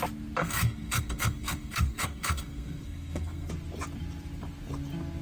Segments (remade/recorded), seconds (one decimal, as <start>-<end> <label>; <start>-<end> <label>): 0.0-0.4 recorded; 0.4-3.5 remade; 3.5-5.2 recorded